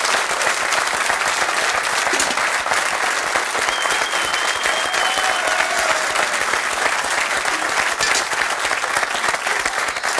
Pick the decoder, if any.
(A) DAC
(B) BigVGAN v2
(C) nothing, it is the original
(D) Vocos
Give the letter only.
C